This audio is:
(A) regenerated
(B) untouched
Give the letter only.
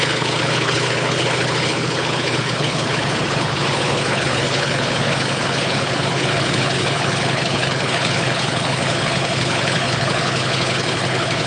A